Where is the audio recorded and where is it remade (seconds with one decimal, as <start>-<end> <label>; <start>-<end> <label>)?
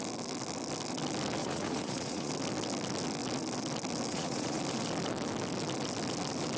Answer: 0.0-1.4 recorded; 1.4-2.3 remade; 2.3-4.1 recorded; 4.1-4.6 remade; 4.6-6.6 recorded